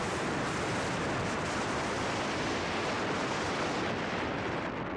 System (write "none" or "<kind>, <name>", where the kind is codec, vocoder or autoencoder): none